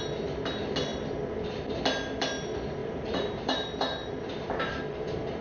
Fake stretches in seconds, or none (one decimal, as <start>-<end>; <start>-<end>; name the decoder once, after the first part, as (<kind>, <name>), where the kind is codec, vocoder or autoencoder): 2.8-4.8 (vocoder, BigVGAN v2)